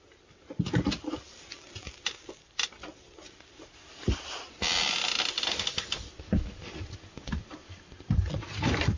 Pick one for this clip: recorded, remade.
recorded